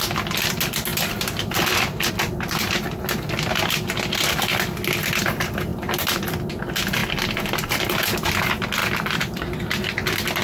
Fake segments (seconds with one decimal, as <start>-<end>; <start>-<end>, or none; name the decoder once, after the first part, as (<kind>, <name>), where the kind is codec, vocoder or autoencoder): 0.9-2.1 (vocoder, BigVGAN v2); 5.7-6.5; 7.0-7.7; 8.8-9.4